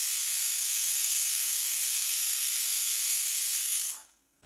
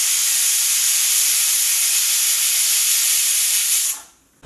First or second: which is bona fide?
second